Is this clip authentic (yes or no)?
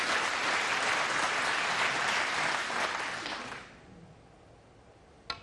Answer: yes